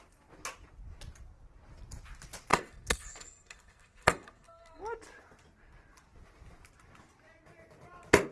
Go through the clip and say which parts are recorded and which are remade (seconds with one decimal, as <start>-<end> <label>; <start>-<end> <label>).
0.0-2.5 recorded; 2.5-4.8 remade; 4.8-8.3 recorded